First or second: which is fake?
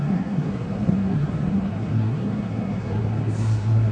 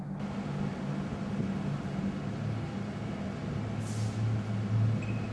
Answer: first